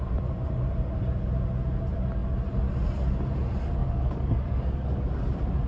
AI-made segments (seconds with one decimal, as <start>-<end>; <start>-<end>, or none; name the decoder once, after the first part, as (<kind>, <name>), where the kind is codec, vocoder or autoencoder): 3.8-5.1 (codec, DAC)

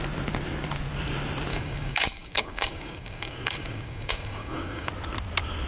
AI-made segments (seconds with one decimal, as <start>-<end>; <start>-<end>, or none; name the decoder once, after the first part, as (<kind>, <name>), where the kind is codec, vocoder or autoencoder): 1.5-4.9 (codec, DAC)

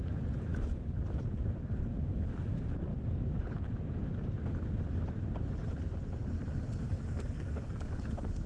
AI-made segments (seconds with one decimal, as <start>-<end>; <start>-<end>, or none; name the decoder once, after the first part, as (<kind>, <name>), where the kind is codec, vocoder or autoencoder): 2.9-3.8 (codec, DAC); 6.8-8.5